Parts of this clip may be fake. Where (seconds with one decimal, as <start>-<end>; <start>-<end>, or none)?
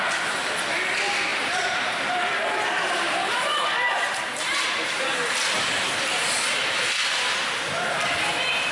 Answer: 1.3-5.3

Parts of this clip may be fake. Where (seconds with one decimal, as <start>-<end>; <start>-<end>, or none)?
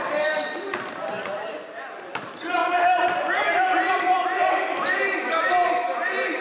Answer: 2.6-6.4